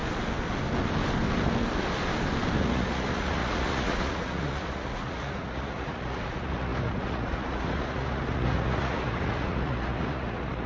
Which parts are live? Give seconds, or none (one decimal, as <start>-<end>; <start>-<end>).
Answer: 0.0-2.6